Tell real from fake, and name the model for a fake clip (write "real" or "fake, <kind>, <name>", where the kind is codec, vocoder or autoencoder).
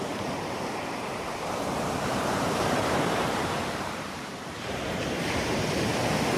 fake, vocoder, BigVGAN v2